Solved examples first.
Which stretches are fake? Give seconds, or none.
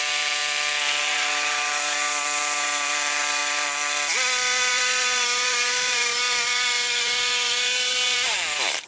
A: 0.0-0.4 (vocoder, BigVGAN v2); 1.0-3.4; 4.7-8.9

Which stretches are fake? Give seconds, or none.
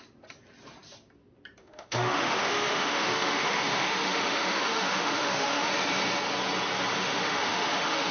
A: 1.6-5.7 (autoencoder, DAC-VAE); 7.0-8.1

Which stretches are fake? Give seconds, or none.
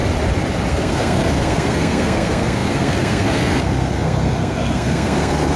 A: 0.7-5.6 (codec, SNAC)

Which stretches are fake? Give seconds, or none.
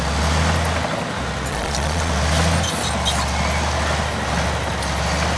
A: 1.5-2.1 (vocoder, Vocos)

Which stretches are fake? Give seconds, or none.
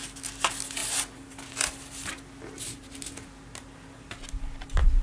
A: none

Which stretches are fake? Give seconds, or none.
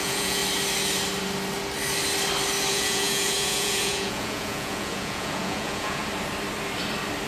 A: 0.0-0.4 (vocoder, Vocos); 2.7-6.0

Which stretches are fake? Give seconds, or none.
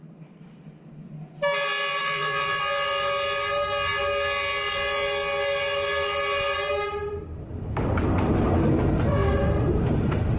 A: 2.0-2.6 (vocoder, Vocos)